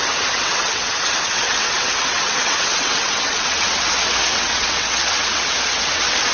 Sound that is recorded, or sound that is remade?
remade